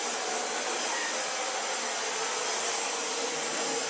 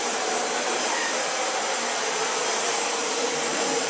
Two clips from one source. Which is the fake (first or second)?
second